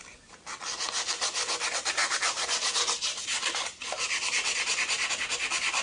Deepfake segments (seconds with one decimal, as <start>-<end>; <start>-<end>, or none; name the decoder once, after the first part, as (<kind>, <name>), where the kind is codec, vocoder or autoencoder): 2.0-5.1 (vocoder, BigVGAN v2)

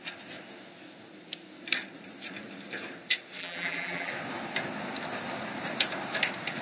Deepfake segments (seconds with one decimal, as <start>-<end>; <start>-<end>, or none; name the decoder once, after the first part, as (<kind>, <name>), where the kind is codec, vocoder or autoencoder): 3.4-4.1 (vocoder, BigVGAN v2)

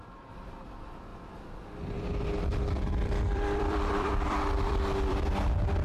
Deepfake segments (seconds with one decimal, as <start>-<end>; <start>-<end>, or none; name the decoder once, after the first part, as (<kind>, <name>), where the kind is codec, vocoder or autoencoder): 0.0-1.1 (vocoder, BigVGAN v2); 1.8-5.8

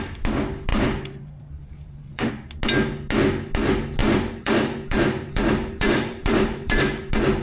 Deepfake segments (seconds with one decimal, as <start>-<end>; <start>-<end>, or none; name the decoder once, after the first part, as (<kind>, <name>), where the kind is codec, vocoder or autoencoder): 0.7-2.3 (vocoder, BigVGAN v2); 4.0-6.8